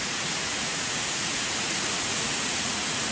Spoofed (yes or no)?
yes